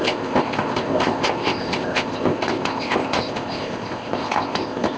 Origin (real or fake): fake